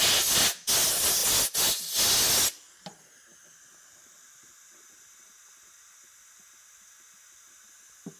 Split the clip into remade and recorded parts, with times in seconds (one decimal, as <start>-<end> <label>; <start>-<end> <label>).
0.0-8.2 recorded